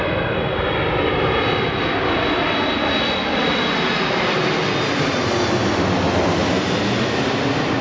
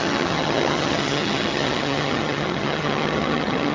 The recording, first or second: first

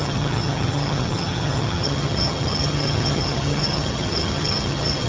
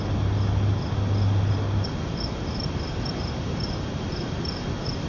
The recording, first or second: second